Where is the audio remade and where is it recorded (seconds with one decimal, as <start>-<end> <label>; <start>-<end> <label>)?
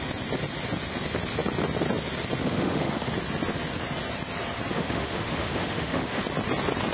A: 0.0-2.4 recorded; 2.4-3.1 remade; 3.1-4.7 recorded; 4.7-6.2 remade; 6.2-6.9 recorded